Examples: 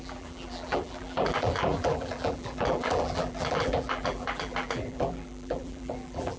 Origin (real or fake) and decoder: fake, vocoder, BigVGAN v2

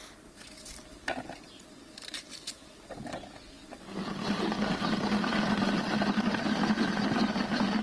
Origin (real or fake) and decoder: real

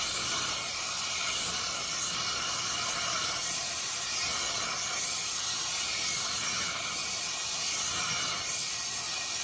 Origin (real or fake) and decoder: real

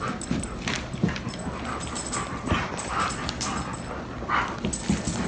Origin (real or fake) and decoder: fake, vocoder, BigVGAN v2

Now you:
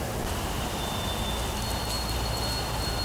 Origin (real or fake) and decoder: real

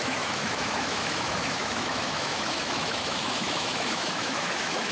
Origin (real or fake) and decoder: fake, autoencoder, DAC-VAE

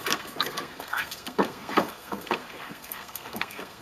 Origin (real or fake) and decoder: fake, codec, SNAC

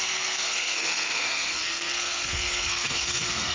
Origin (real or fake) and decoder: fake, codec, SNAC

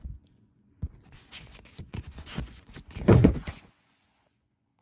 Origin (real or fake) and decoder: fake, vocoder, Vocos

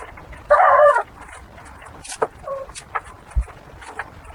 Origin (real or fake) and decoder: real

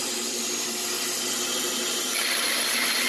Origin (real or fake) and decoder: real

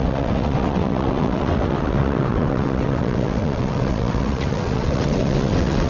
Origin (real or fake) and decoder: fake, vocoder, WaveNeXt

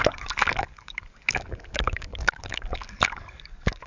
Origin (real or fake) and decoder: fake, codec, DAC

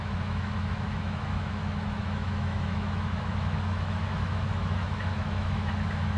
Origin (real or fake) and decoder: fake, autoencoder, DAC-VAE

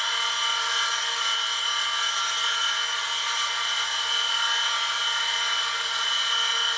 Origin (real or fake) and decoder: real